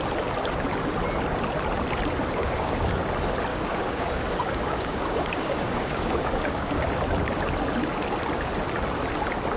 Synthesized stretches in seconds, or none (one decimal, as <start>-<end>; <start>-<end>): 2.4-3.0; 3.5-6.9